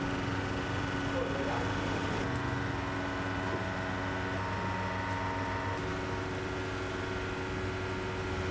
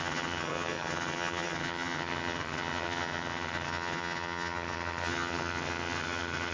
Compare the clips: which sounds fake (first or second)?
second